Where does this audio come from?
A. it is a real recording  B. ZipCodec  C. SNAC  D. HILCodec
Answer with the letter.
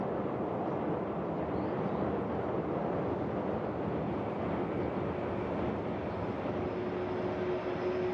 A